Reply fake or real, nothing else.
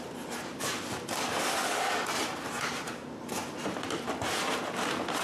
real